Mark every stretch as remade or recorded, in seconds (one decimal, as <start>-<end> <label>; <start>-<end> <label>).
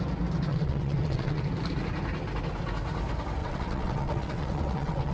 0.0-0.5 recorded; 0.5-1.4 remade; 1.4-3.4 recorded; 3.4-5.1 remade